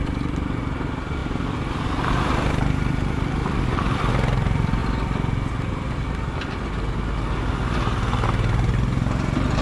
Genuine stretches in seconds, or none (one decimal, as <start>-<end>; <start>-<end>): 4.8-9.6